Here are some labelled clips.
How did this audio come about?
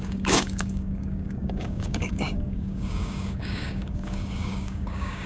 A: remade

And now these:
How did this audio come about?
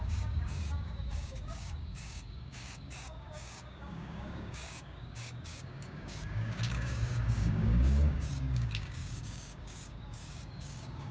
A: remade